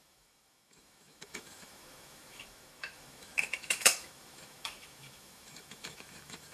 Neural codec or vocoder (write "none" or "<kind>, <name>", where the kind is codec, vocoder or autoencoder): autoencoder, DAC-VAE